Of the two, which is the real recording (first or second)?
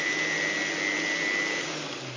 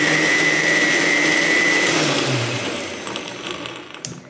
first